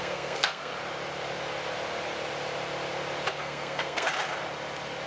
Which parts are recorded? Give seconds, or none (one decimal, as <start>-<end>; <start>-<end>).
0.7-3.4; 4.1-5.1